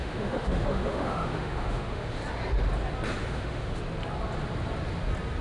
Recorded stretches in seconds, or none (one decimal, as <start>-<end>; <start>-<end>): 2.2-3.2; 3.8-5.4